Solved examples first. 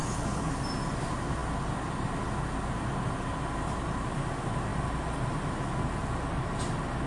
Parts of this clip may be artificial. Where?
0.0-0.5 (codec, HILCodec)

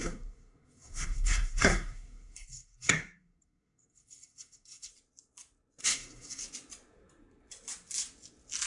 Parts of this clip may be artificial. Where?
0.0-4.9 (codec, SNAC); 5.8-6.4

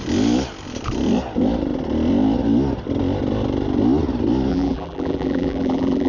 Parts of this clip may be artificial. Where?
4.5-6.1 (vocoder, BigVGAN v2)